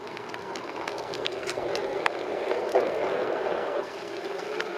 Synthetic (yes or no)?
yes